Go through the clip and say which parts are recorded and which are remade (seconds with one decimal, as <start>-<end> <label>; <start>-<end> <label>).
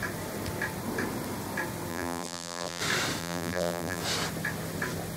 0.0-1.9 recorded; 1.9-2.8 remade; 2.8-3.2 recorded; 3.2-4.0 remade; 4.0-5.2 recorded